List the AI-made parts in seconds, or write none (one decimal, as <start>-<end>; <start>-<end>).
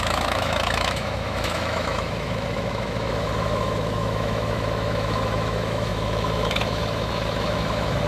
0.0-8.1